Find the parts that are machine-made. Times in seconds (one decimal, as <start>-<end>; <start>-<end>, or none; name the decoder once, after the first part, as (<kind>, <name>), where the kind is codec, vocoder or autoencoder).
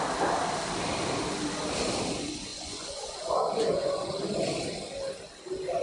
2.5-4.1 (vocoder, Vocos)